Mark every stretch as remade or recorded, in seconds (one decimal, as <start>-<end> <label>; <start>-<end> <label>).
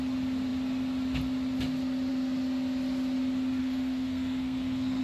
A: 0.0-3.6 recorded; 3.6-5.0 remade